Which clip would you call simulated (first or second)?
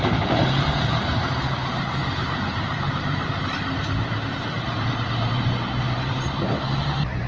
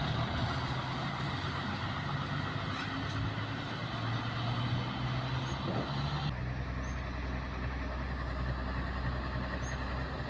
first